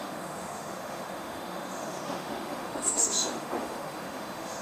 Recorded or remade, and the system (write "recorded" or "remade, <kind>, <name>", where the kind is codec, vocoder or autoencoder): remade, autoencoder, DAC-VAE